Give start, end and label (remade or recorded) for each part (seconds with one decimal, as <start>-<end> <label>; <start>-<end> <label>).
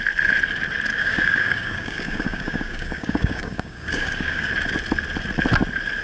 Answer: 0.0-0.9 recorded; 0.9-4.5 remade; 4.5-6.0 recorded